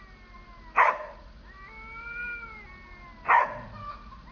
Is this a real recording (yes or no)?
yes